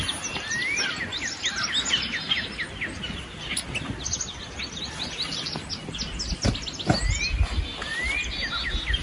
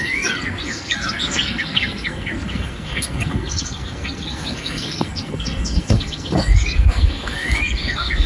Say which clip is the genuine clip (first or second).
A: first